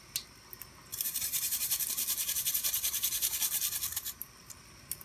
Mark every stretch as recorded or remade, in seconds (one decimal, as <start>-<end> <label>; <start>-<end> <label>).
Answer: 0.0-0.9 recorded; 0.9-2.5 remade; 2.5-3.9 recorded; 3.9-4.6 remade; 4.6-5.0 recorded